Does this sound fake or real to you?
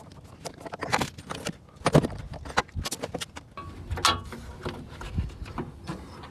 real